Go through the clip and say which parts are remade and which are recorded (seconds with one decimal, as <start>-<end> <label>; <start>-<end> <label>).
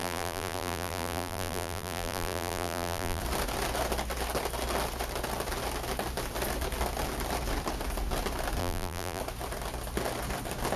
0.0-3.2 remade; 3.2-8.6 recorded; 8.6-9.2 remade; 9.2-10.8 recorded